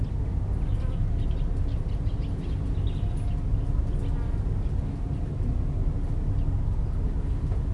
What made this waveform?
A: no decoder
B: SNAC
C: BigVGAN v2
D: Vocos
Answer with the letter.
A